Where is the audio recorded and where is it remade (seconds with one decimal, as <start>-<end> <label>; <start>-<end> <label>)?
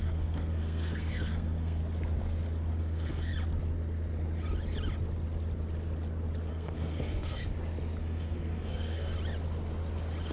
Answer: 0.0-1.8 remade; 1.8-2.8 recorded; 2.8-3.3 remade; 3.3-6.5 recorded; 6.5-7.4 remade; 7.4-8.0 recorded; 8.0-9.1 remade; 9.1-10.3 recorded